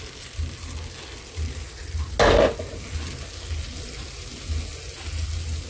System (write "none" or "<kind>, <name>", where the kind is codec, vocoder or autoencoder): none